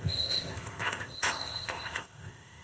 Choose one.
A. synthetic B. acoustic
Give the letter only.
A